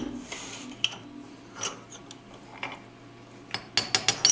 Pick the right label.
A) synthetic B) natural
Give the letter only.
B